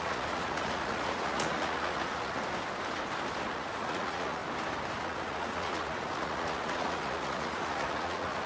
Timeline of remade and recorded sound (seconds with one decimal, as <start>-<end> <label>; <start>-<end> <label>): 0.0-2.4 remade; 2.4-3.4 recorded; 3.4-4.4 remade; 4.4-5.0 recorded; 5.0-8.5 remade